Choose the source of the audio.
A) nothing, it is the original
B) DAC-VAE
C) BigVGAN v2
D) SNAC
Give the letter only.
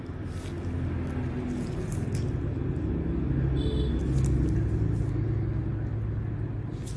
A